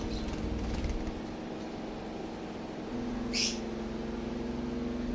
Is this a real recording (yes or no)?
yes